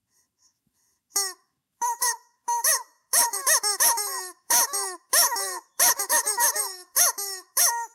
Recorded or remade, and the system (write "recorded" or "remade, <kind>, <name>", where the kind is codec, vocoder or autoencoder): remade, autoencoder, DAC-VAE